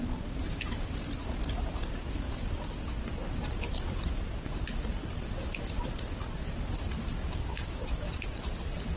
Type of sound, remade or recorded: recorded